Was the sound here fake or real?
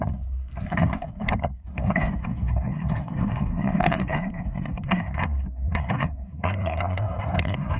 fake